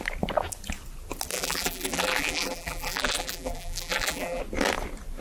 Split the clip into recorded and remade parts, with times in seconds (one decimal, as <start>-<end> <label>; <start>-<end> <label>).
0.0-1.3 recorded; 1.3-4.4 remade; 4.4-5.2 recorded